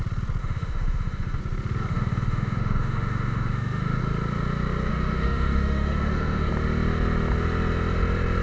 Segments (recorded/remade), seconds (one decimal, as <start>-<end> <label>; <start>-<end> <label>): 0.0-0.4 recorded; 0.4-1.4 remade; 1.4-1.9 recorded; 1.9-4.0 remade; 4.0-4.9 recorded; 4.9-6.5 remade; 6.5-8.4 recorded